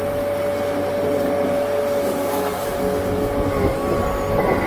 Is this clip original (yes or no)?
yes